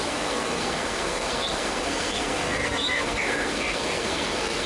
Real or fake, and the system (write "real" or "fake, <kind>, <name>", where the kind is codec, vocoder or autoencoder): fake, codec, SNAC